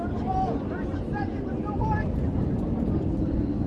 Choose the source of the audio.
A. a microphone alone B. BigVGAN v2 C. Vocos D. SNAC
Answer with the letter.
A